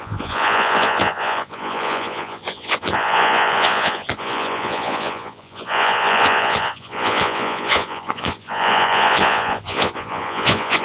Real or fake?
fake